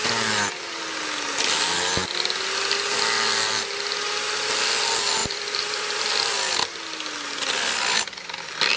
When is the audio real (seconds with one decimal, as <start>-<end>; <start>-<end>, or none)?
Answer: 0.0-5.2; 6.1-8.8